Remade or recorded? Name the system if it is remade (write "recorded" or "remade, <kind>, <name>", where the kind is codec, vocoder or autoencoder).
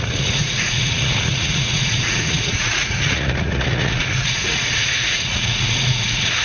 remade, vocoder, Vocos